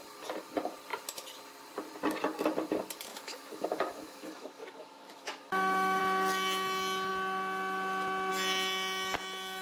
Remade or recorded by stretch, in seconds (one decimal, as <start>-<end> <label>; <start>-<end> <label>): 0.0-3.1 recorded; 3.1-6.0 remade; 6.0-9.6 recorded